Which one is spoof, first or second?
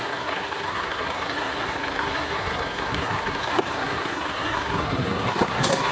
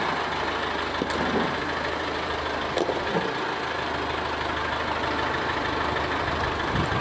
first